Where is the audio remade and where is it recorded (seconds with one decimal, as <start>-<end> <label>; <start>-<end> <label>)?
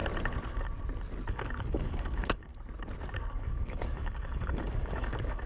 0.0-1.3 recorded; 1.3-2.5 remade; 2.5-3.3 recorded; 3.3-5.5 remade